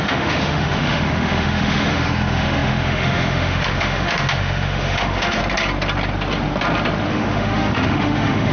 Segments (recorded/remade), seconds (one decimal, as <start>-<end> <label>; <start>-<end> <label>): 0.0-5.4 remade; 5.4-7.1 recorded; 7.1-8.5 remade